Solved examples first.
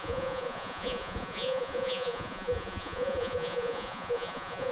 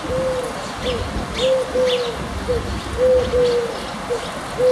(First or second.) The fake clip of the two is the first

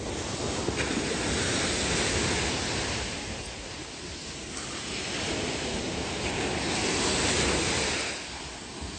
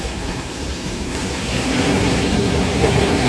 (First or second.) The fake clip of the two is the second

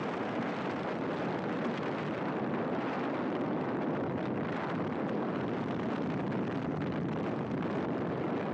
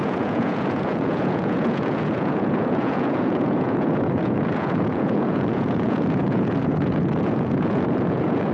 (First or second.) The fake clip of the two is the second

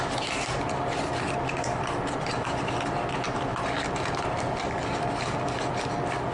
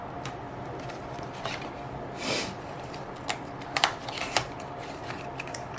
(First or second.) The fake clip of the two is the second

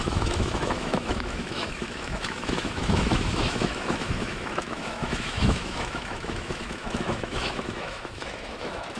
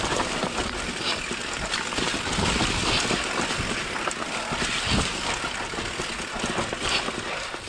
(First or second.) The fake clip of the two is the first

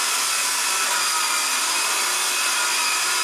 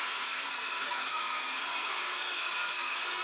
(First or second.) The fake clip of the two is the second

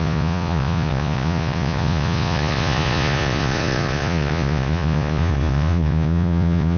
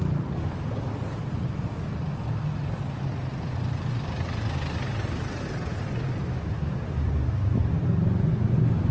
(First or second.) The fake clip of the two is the first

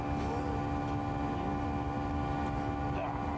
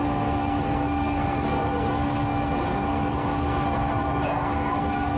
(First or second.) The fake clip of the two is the second